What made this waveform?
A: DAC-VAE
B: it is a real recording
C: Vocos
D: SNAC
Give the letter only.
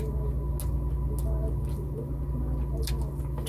B